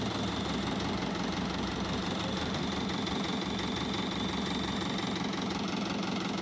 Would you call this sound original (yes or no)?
yes